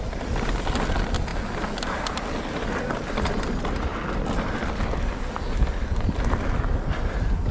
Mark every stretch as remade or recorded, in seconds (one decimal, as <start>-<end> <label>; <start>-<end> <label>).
0.0-7.5 recorded